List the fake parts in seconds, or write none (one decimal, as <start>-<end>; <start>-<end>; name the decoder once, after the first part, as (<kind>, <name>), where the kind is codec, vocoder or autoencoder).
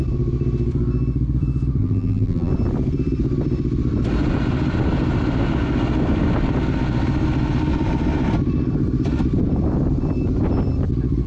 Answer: 1.8-2.5 (vocoder, BigVGAN v2)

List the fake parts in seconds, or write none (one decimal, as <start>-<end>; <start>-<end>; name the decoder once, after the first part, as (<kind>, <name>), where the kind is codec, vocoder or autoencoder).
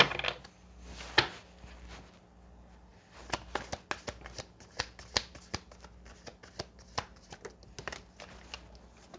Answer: none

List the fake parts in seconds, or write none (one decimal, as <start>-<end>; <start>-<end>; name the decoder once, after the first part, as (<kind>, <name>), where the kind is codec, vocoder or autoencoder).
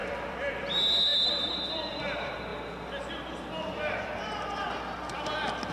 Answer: 0.0-2.5 (vocoder, BigVGAN v2); 3.6-5.7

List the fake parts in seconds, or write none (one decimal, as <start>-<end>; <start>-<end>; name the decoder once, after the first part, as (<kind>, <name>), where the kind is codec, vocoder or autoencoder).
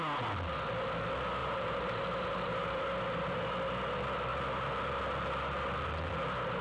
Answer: 1.4-2.8 (vocoder, BigVGAN v2)